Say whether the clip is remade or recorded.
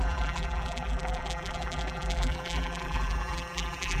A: remade